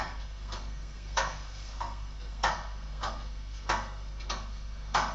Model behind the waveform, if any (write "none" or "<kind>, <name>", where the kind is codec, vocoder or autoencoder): codec, SNAC